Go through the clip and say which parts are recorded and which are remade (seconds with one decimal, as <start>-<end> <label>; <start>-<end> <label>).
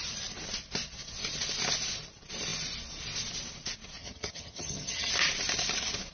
0.0-4.0 recorded; 4.0-5.1 remade; 5.1-6.1 recorded